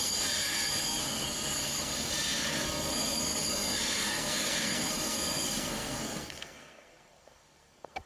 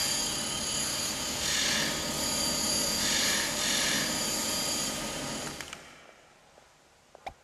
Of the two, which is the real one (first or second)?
second